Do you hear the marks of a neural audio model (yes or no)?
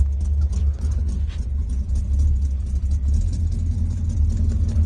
no